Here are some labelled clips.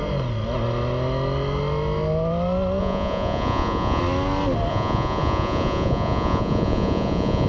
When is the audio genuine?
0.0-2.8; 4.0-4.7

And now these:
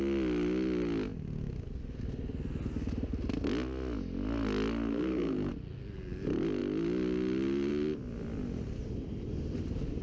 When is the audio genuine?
0.0-4.9; 5.5-10.0

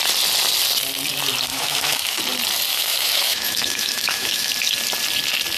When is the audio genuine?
0.0-1.5; 2.2-2.7; 4.5-5.6

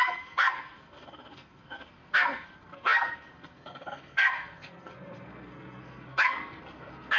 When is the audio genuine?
none

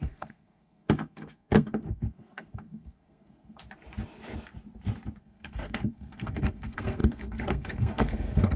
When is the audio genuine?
3.6-5.2

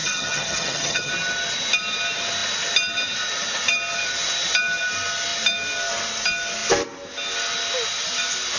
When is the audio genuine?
1.1-8.6

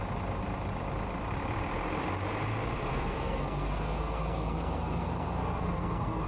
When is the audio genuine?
0.0-2.9